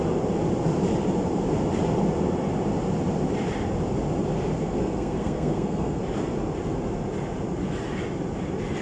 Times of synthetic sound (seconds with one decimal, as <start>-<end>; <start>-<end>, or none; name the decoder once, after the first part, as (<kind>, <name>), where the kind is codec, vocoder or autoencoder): 4.6-6.0 (codec, SNAC)